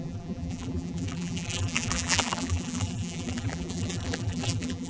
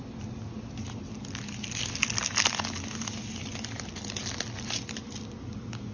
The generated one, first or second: first